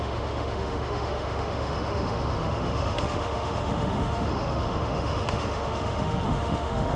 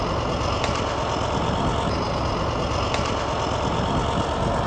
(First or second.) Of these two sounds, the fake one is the first